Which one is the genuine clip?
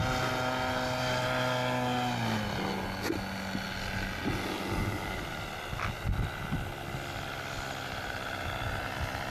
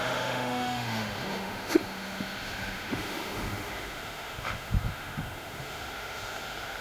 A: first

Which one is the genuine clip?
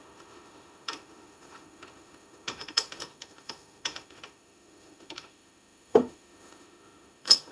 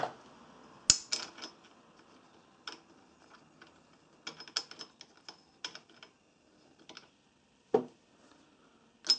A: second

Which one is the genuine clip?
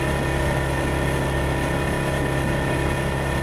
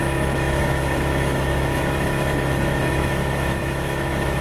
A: first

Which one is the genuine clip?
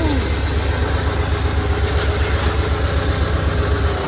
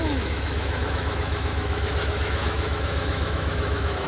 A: first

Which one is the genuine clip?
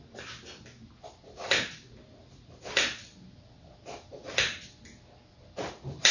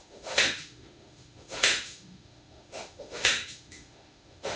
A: first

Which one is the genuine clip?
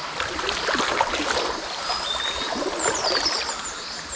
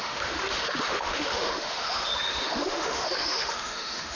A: first